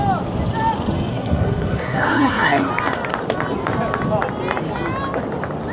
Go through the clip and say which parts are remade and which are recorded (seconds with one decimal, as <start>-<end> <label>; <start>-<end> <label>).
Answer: 0.0-1.1 recorded; 1.1-2.7 remade; 2.7-5.7 recorded